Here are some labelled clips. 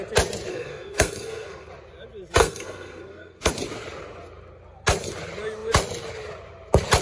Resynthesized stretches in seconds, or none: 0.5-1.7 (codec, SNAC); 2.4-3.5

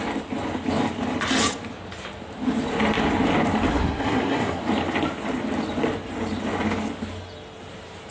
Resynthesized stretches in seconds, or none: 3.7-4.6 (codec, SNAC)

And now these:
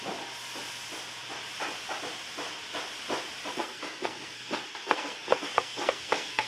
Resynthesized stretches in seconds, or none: 3.5-6.5 (codec, SNAC)

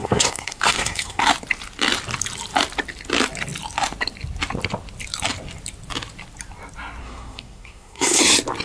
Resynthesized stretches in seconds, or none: 0.0-1.2 (codec, SNAC); 7.0-8.2

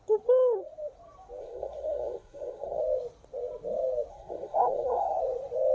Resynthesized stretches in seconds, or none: 1.4-2.8 (codec, SNAC); 4.1-5.2